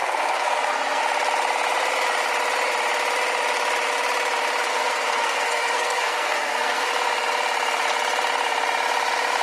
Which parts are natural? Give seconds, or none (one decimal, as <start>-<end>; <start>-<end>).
1.0-4.7; 6.9-9.4